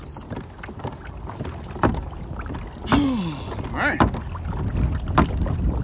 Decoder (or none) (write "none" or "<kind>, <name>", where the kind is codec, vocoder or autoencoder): none